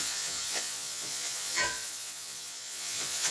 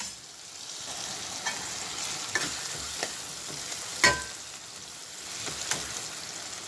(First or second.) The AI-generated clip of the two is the first